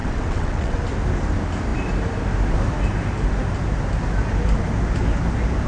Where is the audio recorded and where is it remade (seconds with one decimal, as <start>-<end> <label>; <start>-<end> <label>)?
0.0-0.8 remade; 0.8-5.7 recorded